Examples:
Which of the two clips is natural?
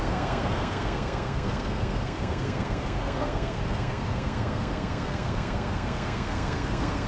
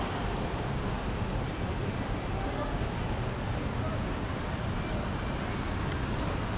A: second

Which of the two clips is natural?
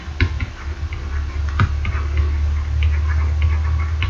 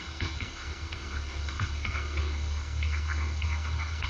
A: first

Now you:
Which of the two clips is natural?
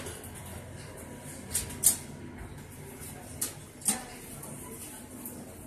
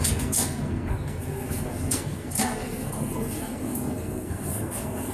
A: first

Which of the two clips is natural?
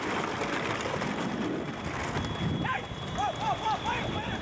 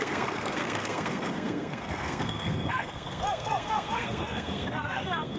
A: first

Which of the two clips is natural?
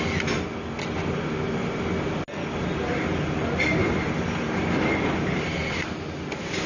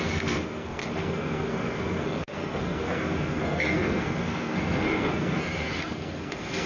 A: first